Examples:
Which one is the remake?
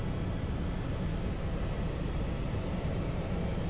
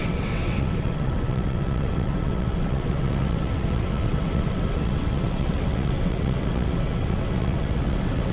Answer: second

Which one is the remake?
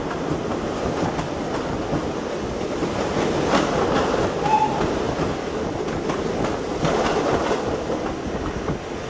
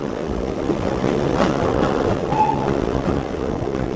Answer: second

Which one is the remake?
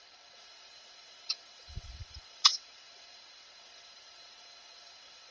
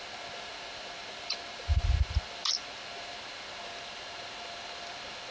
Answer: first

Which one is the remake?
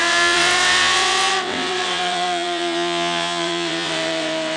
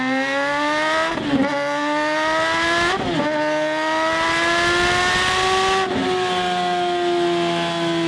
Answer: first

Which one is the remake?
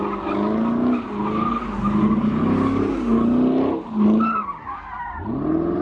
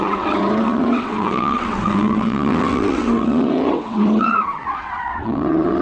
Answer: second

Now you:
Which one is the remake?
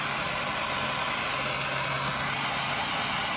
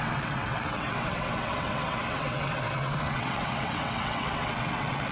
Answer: second